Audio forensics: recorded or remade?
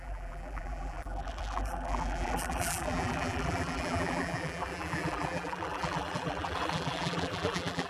remade